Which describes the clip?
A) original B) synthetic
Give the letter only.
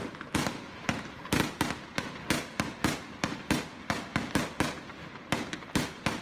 A